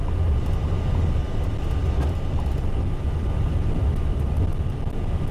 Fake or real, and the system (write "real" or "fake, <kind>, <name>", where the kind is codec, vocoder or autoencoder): real